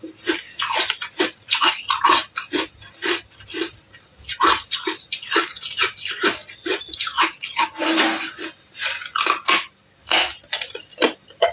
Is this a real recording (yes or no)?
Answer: yes